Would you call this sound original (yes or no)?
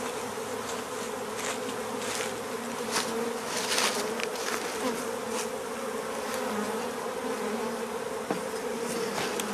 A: yes